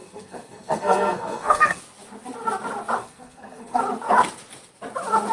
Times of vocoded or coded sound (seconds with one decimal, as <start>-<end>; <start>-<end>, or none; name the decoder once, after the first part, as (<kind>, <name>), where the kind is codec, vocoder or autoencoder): 0.0-1.8 (codec, SNAC); 3.0-3.8